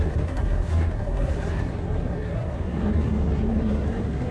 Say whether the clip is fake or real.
fake